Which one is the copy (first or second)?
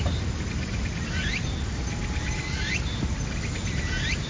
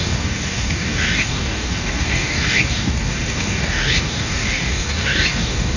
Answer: second